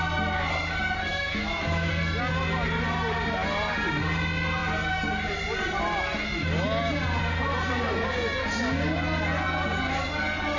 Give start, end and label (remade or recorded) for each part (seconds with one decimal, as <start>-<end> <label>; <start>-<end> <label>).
0.0-1.1 recorded; 1.1-1.9 remade; 1.9-10.6 recorded